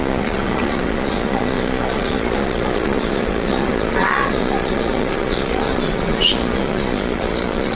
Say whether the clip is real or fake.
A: fake